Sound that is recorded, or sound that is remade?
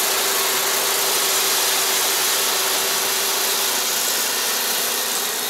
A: recorded